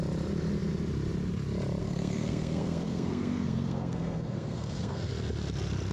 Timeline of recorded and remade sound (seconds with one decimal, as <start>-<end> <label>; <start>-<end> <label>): 0.0-1.8 recorded; 1.8-5.1 remade; 5.1-5.9 recorded